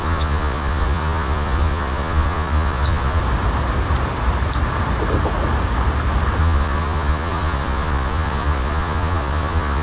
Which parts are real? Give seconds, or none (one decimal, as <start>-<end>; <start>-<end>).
3.2-6.4